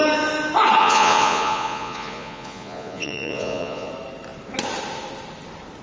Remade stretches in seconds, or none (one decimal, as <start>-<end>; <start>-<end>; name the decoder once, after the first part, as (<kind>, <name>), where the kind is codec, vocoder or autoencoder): 0.8-3.9 (vocoder, Vocos)